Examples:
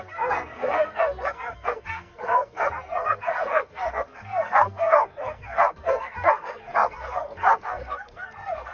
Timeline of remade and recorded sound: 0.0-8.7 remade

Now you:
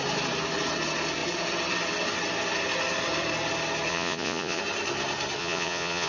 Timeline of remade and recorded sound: 0.0-3.9 recorded; 3.9-4.6 remade; 4.6-5.4 recorded; 5.4-6.1 remade